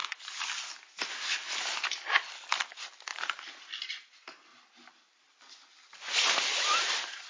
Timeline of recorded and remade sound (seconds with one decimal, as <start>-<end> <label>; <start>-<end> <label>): 0.0-3.1 recorded; 3.1-3.9 remade; 3.9-7.3 recorded